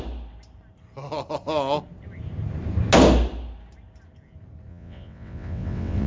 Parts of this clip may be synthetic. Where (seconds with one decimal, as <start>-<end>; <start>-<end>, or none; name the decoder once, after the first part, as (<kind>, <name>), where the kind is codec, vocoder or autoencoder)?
4.7-6.1 (vocoder, WaveNeXt)